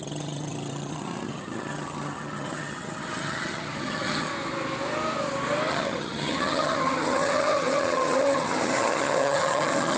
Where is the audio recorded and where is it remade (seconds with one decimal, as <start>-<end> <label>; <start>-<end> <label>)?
0.0-4.3 remade; 4.3-5.7 recorded; 5.7-10.0 remade